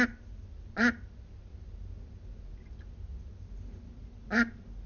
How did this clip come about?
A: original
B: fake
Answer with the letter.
A